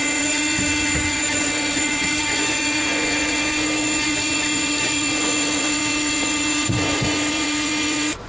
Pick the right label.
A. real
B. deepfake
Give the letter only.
B